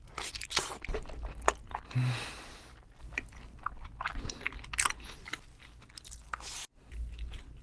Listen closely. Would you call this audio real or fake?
real